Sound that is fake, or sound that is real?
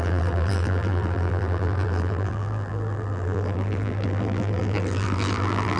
fake